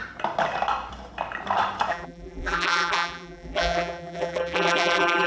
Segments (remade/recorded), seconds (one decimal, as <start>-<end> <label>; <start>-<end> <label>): 0.0-1.9 recorded; 1.9-5.3 remade